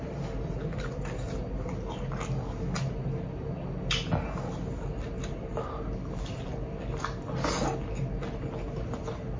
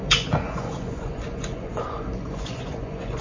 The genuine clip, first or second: first